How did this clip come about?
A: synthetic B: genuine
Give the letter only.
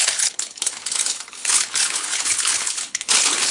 A